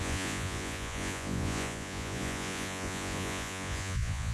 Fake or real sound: fake